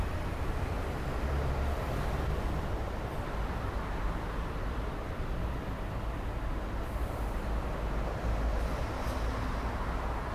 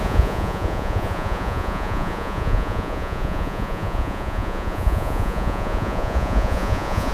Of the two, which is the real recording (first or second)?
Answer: first